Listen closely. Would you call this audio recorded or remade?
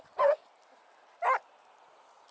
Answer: recorded